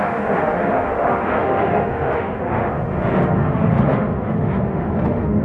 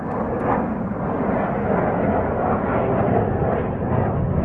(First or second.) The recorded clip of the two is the second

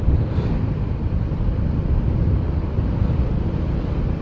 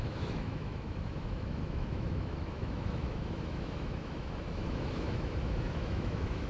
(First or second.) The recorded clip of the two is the first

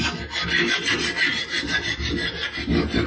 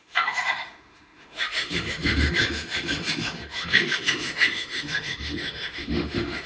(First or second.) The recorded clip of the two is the first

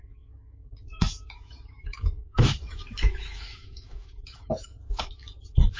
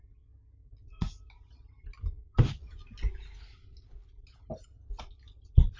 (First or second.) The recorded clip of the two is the second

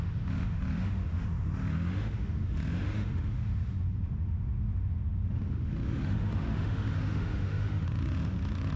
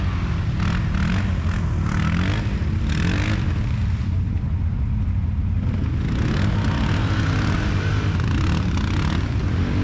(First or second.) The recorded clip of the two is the second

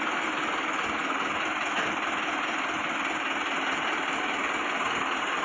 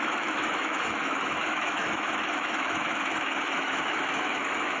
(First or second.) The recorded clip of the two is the first